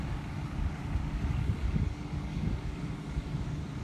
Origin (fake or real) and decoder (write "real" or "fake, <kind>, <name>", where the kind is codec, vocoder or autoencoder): fake, codec, DAC